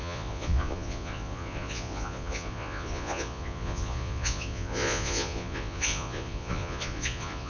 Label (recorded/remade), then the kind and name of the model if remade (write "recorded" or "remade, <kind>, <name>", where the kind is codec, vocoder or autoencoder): remade, vocoder, Vocos